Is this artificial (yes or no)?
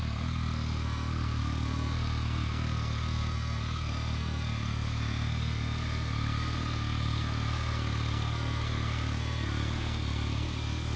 yes